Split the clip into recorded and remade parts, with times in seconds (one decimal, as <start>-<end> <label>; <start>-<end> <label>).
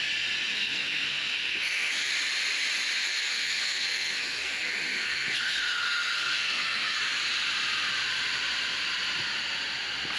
0.0-0.5 recorded; 0.5-2.1 remade; 2.1-3.0 recorded; 3.0-7.0 remade; 7.0-10.2 recorded